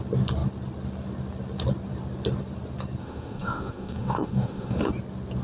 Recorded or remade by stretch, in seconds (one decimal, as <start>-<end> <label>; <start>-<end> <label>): 0.0-3.0 recorded; 3.0-4.9 remade; 4.9-5.4 recorded